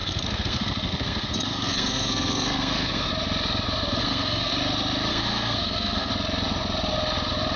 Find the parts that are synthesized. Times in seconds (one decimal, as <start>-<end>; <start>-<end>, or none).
0.0-3.1; 4.0-4.5; 5.1-6.1